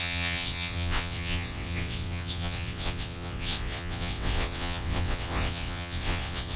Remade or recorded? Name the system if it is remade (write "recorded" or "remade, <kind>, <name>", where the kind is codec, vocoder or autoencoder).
remade, vocoder, WaveNeXt